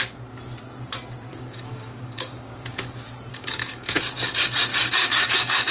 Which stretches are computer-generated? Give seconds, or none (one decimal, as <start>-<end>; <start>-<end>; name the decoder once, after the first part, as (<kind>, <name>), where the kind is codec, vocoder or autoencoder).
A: 1.3-2.8 (codec, DAC); 3.3-4.0; 4.7-5.7